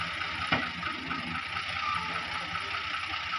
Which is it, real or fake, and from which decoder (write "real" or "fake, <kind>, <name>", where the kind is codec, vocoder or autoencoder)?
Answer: real